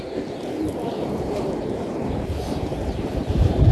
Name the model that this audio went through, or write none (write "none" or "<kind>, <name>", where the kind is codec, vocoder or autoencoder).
vocoder, BigVGAN v2